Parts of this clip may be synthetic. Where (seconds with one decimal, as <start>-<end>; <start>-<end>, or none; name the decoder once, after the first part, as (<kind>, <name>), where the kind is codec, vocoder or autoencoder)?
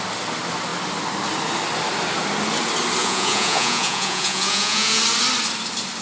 3.0-5.0 (vocoder, Vocos)